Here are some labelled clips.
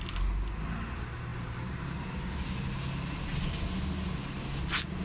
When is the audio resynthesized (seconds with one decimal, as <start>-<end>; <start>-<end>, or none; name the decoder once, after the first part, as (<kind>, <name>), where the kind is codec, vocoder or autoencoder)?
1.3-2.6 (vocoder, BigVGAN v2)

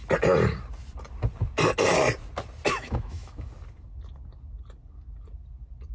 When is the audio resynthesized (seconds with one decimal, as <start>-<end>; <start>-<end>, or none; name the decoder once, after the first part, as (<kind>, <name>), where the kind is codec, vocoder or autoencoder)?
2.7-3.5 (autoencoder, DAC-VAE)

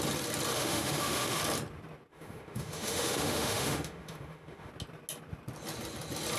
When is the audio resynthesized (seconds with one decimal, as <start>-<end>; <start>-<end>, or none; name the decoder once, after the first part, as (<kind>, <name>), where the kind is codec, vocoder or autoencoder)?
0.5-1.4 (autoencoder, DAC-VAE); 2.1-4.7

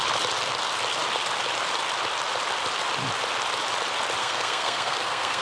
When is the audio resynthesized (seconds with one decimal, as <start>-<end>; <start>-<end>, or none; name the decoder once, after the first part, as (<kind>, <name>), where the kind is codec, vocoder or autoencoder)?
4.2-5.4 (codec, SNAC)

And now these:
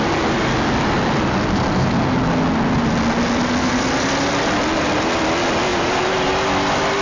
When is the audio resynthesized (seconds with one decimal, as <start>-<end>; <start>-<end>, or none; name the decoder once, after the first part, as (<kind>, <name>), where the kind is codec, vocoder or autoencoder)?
5.7-6.3 (vocoder, BigVGAN v2)

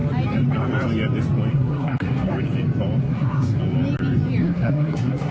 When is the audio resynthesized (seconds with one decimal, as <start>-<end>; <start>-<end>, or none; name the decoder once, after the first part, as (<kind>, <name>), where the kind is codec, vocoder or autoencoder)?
1.5-2.3 (codec, SNAC); 3.0-3.6; 4.4-5.3